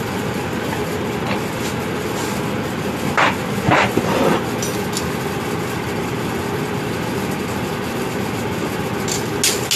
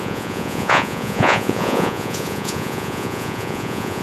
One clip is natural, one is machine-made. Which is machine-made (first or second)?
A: second